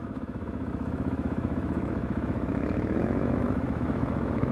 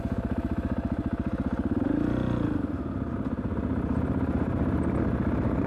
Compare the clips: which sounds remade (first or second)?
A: first